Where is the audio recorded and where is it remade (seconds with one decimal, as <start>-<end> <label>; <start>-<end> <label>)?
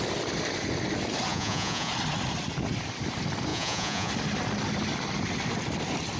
0.0-1.3 recorded; 1.3-1.9 remade; 1.9-3.5 recorded; 3.5-4.1 remade; 4.1-6.2 recorded